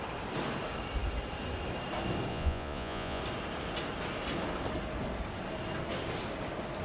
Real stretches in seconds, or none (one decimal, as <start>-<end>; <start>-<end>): 0.0-2.3; 3.2-6.8